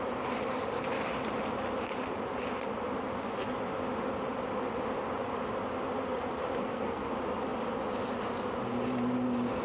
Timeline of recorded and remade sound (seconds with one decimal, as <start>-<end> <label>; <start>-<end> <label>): 0.0-6.6 recorded; 6.6-7.1 remade; 7.1-9.6 recorded